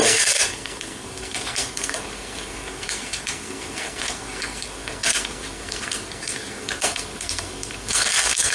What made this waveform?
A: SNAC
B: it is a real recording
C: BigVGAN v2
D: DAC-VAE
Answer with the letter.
A